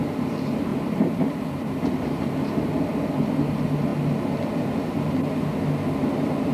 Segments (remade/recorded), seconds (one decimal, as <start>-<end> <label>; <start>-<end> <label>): 0.0-0.7 recorded; 0.7-2.3 remade; 2.3-6.5 recorded